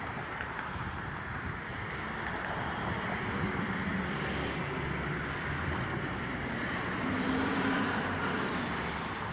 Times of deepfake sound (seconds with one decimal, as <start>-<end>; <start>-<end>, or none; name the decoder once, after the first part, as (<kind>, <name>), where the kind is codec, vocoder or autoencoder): 0.0-1.7 (vocoder, BigVGAN v2); 3.5-3.9; 5.6-9.3